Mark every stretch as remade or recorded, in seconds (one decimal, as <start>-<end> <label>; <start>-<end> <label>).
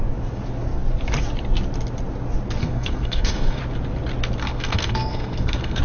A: 0.0-2.6 recorded; 2.6-3.6 remade; 3.6-4.5 recorded; 4.5-5.8 remade